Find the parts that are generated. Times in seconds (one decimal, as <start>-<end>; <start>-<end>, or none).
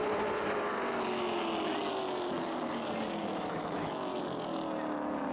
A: 3.2-4.1